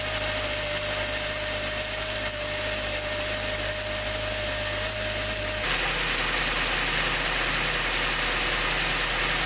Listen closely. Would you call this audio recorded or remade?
recorded